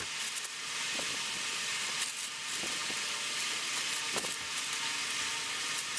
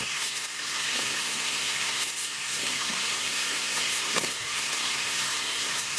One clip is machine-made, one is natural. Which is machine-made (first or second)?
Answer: second